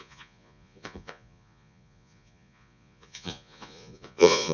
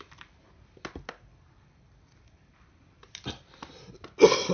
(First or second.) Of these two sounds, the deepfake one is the first